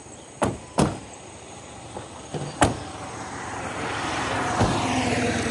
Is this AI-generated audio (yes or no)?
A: yes